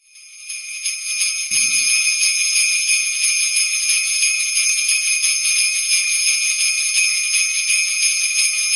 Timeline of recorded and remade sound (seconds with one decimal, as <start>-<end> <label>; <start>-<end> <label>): 0.0-8.8 remade